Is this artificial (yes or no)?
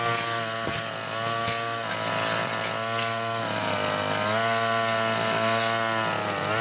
no